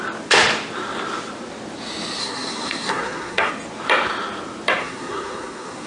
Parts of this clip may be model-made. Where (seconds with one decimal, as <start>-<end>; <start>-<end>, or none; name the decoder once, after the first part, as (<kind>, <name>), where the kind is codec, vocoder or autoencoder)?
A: 2.2-3.5 (codec, SNAC); 4.8-5.9